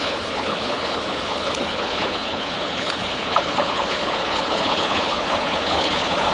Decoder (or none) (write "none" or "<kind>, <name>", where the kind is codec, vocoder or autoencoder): codec, HILCodec